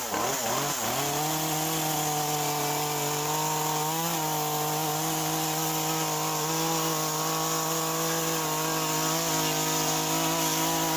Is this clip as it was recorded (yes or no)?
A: yes